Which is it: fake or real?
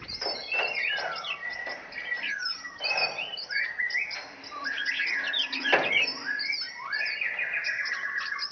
real